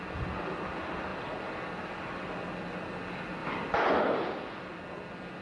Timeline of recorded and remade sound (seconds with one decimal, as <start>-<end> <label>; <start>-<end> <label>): 0.0-5.4 recorded